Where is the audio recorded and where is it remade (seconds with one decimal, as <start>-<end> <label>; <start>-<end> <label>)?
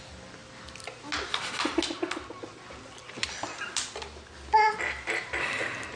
0.0-6.0 recorded